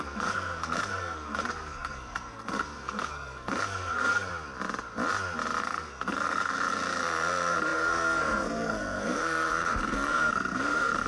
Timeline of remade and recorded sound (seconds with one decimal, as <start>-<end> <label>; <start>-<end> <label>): 0.0-4.3 remade; 4.3-5.6 recorded; 5.6-11.1 remade